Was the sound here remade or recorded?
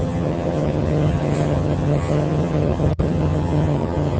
remade